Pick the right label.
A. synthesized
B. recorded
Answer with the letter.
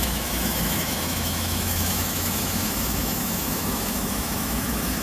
A